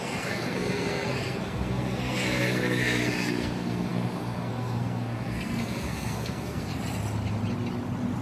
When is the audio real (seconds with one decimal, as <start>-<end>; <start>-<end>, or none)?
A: 6.7-8.2